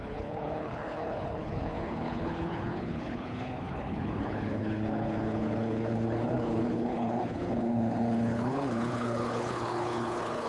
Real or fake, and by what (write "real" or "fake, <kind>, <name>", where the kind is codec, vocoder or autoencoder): fake, codec, HILCodec